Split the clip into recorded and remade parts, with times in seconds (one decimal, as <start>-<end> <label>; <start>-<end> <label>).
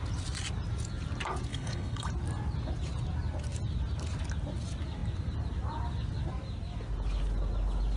0.0-1.5 recorded; 1.5-2.1 remade; 2.1-8.0 recorded